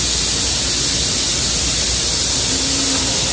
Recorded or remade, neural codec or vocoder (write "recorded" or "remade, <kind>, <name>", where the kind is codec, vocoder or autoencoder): recorded